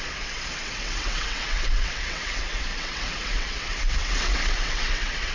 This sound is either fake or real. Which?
fake